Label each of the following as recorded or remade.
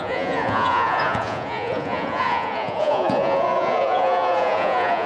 remade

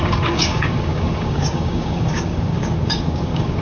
remade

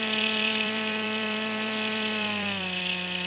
remade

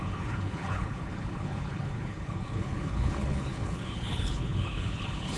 remade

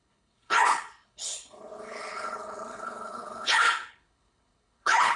remade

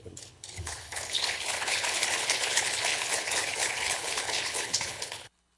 remade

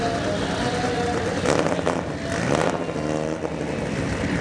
recorded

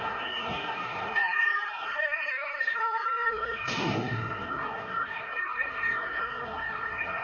remade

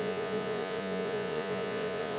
remade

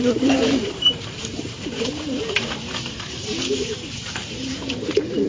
remade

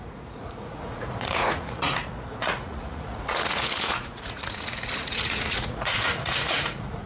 remade